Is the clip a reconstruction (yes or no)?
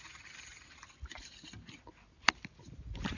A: no